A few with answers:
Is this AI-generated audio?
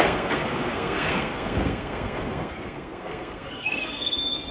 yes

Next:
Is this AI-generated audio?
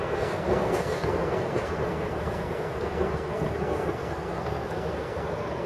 yes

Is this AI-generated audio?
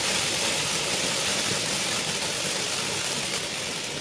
no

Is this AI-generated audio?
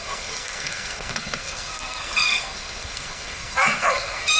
yes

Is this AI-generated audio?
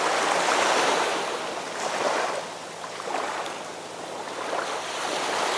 no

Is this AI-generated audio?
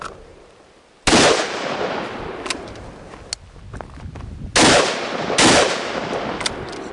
no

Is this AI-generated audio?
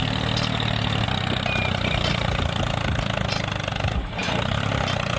no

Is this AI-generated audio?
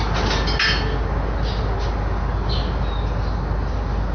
no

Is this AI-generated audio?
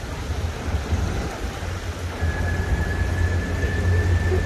no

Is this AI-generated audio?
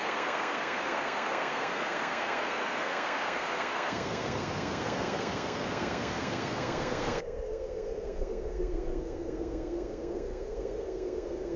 yes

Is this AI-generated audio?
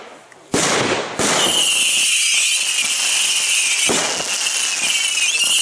no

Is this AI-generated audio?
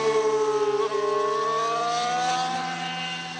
no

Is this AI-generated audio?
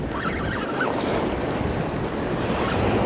no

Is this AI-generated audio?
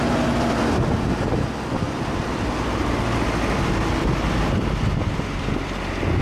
no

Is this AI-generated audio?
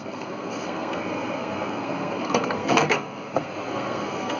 yes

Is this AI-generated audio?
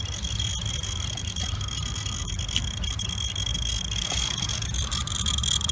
no